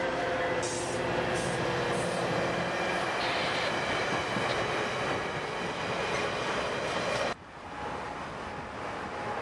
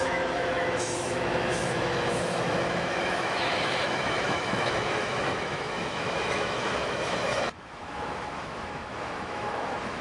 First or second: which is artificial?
second